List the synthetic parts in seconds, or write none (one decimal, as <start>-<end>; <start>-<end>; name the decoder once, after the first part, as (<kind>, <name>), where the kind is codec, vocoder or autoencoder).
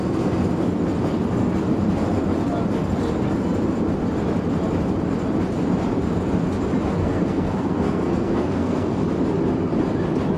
7.0-9.0 (codec, SNAC)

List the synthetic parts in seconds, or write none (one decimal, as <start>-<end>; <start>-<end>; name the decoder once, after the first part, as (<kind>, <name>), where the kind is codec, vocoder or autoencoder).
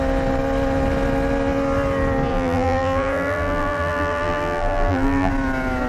2.3-5.3 (vocoder, BigVGAN v2)